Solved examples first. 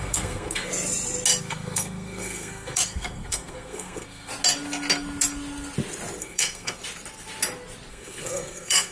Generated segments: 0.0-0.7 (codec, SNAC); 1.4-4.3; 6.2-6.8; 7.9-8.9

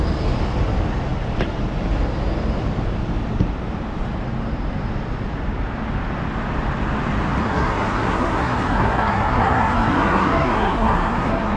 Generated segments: 7.4-11.6 (codec, SNAC)

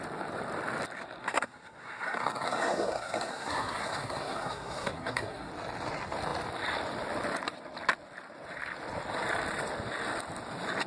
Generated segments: 1.2-5.5 (codec, SNAC)